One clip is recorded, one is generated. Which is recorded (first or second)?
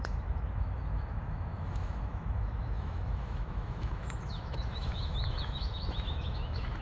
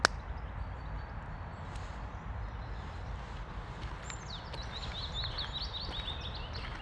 second